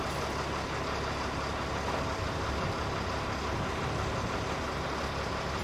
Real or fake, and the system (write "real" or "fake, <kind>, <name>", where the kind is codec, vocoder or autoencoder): real